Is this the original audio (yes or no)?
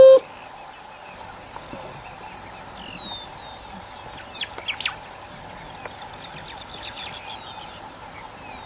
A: yes